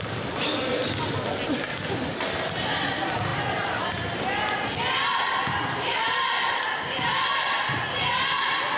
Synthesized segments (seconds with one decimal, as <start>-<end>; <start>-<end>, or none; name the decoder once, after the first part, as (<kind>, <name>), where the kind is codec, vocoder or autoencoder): 3.3-3.8 (vocoder, BigVGAN v2)